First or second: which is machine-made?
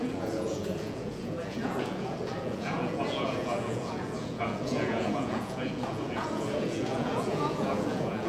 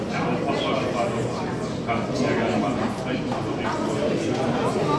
first